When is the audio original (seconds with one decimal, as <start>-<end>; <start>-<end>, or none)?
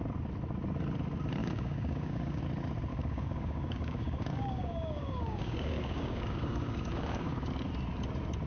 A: 0.0-1.4; 2.4-2.9; 7.5-8.5